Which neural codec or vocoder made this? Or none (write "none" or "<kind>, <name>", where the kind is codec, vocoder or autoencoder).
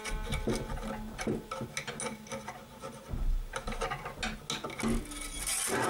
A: none